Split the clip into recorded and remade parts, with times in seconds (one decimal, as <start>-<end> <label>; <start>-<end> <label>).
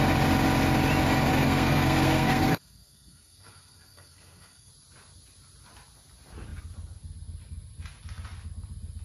0.0-1.3 recorded; 1.3-4.7 remade; 4.7-9.0 recorded